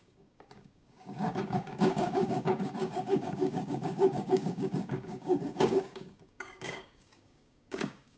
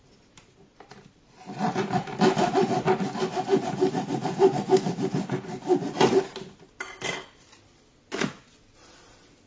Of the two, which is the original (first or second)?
second